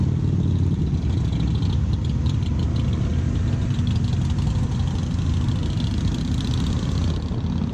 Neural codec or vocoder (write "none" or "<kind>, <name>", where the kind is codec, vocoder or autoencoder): none